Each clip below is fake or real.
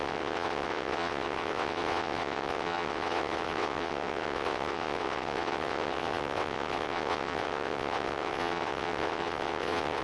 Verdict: fake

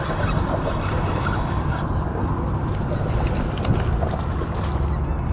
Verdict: real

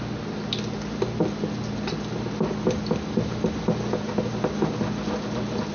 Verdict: real